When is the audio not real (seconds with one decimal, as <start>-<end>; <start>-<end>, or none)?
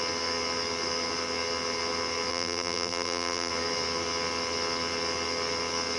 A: 2.3-3.5